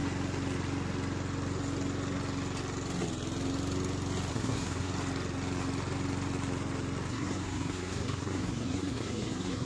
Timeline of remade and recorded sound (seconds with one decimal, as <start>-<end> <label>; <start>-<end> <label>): 0.0-4.3 recorded; 4.3-4.9 remade; 4.9-7.1 recorded; 7.1-9.7 remade